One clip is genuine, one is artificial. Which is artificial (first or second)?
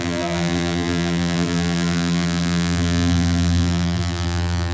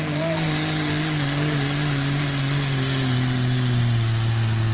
first